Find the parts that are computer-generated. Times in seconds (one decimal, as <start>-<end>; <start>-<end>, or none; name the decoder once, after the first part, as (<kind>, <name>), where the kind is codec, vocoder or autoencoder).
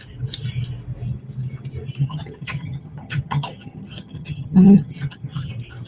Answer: 2.0-5.5 (vocoder, HiFi-GAN)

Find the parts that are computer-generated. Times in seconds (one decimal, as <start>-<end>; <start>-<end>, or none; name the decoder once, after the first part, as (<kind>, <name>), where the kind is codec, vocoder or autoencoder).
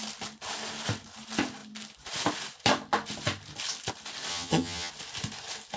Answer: 4.3-4.9 (vocoder, HiFi-GAN)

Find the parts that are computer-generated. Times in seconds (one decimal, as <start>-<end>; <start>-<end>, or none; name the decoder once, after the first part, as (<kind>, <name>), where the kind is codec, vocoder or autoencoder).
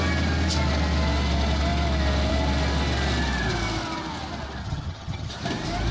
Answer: 4.6-5.3 (vocoder, HiFi-GAN)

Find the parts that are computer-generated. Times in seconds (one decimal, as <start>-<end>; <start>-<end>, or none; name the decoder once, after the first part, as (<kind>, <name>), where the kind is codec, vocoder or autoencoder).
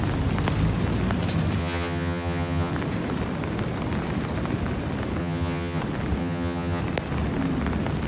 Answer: 1.6-2.7 (vocoder, HiFi-GAN); 5.2-5.8; 6.2-6.8